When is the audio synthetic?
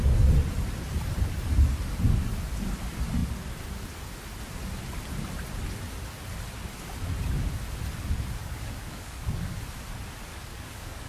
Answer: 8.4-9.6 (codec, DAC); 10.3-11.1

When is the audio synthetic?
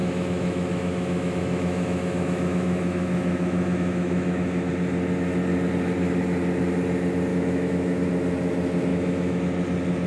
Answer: 0.0-4.7 (autoencoder, DAC-VAE); 7.3-8.1; 8.9-9.4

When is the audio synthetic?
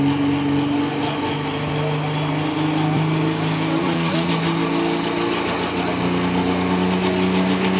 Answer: 3.8-4.3 (vocoder, Vocos)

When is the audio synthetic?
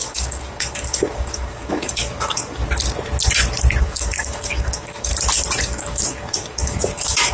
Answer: 0.0-2.6 (codec, DAC); 3.8-5.1; 5.6-7.3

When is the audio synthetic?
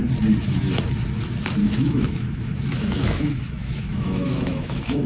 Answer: 1.6-5.1 (autoencoder, DAC-VAE)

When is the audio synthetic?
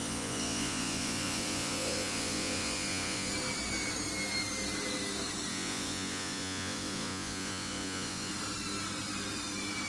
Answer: 0.0-3.3 (vocoder, Vocos); 5.5-8.3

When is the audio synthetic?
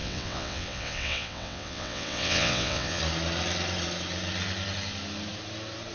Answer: 0.0-3.0 (vocoder, WaveNeXt)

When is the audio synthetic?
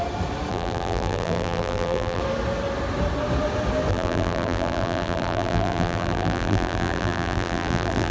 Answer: 0.5-2.2 (vocoder, BigVGAN v2); 3.9-8.1